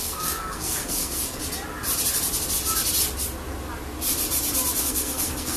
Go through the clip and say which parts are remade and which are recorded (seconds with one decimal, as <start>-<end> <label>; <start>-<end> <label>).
0.0-1.4 remade; 1.4-4.8 recorded; 4.8-5.6 remade